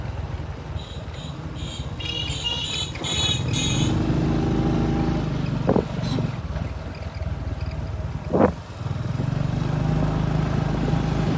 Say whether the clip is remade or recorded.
recorded